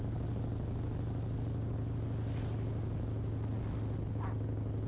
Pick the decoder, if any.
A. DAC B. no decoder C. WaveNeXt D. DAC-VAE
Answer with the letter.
B